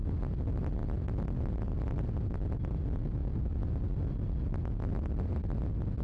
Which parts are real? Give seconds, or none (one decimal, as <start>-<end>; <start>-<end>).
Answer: 0.0-6.0